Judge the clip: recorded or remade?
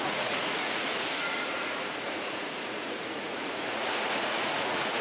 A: remade